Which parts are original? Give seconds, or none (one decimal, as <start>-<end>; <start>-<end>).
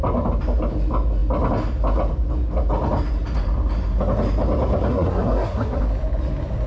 0.0-4.9; 5.8-6.7